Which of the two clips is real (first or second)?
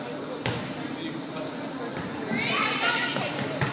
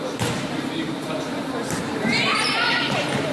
first